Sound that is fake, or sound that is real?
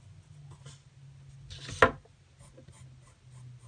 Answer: real